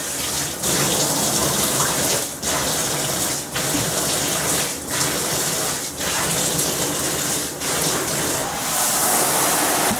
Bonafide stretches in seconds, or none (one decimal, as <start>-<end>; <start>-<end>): 0.0-1.4; 2.4-10.0